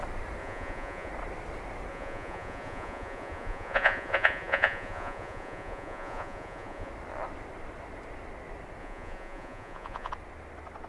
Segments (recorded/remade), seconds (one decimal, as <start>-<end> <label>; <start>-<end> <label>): 0.0-0.4 recorded; 0.4-1.1 remade; 1.1-1.9 recorded; 1.9-6.9 remade; 6.9-8.8 recorded; 8.8-10.1 remade; 10.1-10.9 recorded